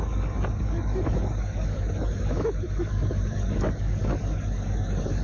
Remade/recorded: remade